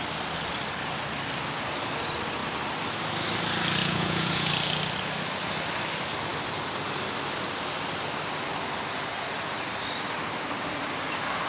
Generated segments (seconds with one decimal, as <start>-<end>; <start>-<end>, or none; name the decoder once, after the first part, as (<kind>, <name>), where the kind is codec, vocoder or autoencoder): 3.8-4.5 (vocoder, Vocos)